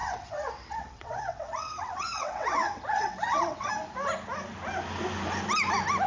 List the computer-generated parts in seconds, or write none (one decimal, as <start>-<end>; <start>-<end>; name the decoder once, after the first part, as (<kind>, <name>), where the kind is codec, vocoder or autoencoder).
0.0-3.7 (vocoder, WaveNeXt)